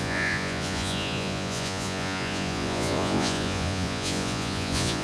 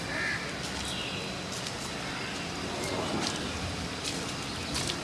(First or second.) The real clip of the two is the second